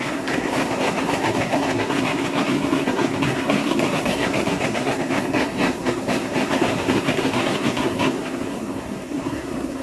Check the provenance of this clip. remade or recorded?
remade